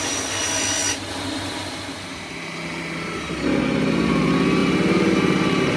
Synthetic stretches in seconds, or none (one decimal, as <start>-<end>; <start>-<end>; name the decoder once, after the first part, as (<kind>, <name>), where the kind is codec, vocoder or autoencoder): 4.6-5.8 (vocoder, BigVGAN v2)